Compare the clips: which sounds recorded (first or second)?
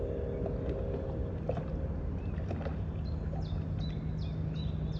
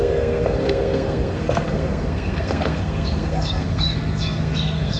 first